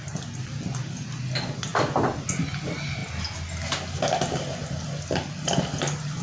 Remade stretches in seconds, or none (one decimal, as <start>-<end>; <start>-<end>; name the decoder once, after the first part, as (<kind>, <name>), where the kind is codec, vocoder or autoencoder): none